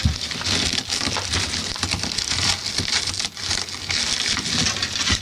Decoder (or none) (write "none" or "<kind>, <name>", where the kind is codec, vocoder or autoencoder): none